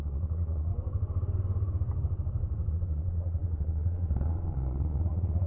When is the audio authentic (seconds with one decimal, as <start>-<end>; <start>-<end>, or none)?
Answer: 0.7-2.7